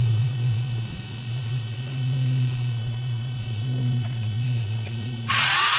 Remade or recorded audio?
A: remade